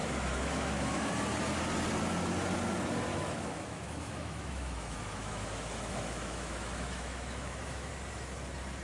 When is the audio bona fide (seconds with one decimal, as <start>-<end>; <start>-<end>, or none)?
1.1-3.1; 7.9-8.8